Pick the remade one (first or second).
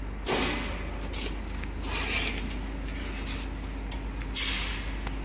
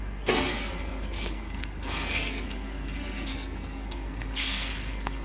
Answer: second